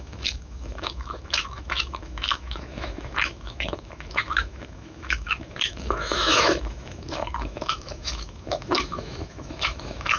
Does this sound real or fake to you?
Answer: fake